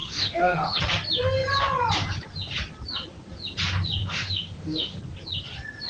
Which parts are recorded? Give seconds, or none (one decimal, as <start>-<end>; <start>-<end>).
0.8-4.0; 5.0-5.9